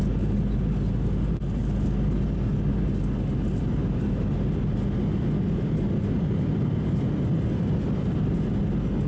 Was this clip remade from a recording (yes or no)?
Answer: no